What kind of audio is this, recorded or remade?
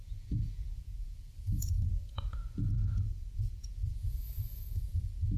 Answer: remade